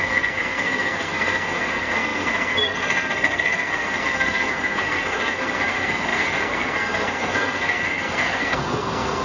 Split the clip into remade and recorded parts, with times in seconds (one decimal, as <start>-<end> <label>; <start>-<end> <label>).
0.0-9.2 remade